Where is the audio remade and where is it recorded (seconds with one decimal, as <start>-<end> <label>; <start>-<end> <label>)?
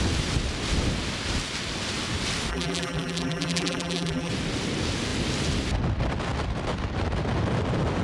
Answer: 0.0-2.5 recorded; 2.5-4.3 remade; 4.3-8.0 recorded